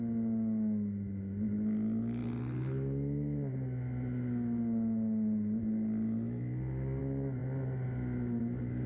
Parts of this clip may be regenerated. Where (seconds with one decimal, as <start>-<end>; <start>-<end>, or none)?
none